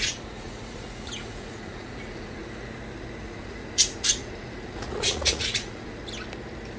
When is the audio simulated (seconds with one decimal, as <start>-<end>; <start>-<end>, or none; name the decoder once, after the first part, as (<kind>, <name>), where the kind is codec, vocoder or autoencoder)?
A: 0.0-2.4 (vocoder, Vocos); 3.2-6.0